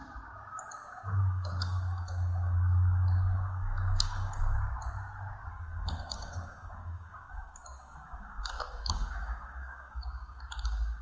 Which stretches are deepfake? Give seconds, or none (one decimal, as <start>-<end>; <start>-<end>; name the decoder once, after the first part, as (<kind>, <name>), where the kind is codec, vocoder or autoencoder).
1.2-4.4 (codec, DAC); 5.5-11.0